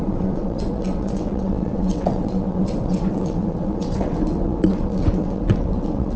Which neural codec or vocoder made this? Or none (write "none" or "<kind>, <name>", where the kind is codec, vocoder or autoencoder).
vocoder, WaveNeXt